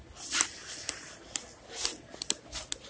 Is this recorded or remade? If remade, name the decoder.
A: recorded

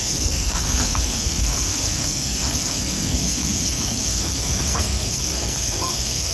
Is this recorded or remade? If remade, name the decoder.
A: remade, codec, SNAC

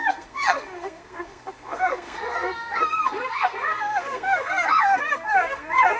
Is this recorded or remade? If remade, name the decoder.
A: remade, codec, SNAC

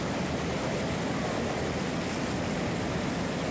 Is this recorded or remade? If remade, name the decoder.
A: recorded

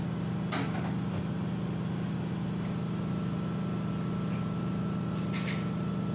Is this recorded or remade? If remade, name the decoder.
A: recorded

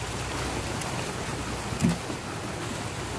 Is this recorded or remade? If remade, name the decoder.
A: recorded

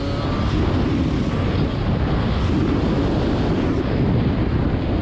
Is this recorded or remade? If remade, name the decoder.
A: recorded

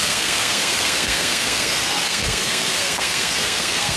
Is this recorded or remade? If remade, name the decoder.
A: remade, codec, SNAC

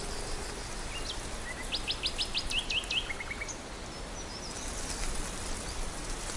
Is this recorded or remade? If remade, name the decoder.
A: recorded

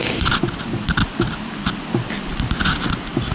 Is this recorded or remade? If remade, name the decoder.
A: recorded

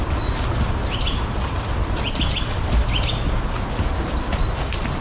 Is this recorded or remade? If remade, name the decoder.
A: recorded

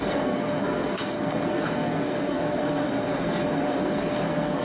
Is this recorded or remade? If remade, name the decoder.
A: remade, codec, SNAC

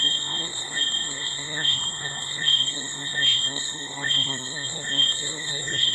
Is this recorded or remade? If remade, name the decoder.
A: remade, codec, SNAC